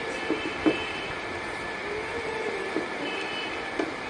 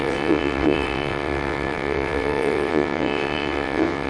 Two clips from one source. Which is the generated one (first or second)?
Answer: second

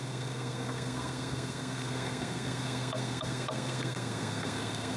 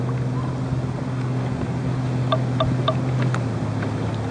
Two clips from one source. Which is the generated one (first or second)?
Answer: first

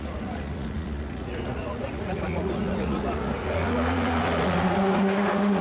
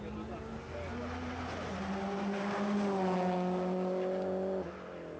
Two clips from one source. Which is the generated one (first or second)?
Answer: first